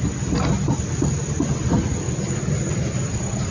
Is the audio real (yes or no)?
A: yes